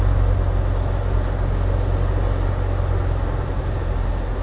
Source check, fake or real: real